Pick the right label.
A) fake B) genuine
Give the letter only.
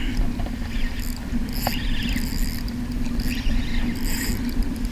B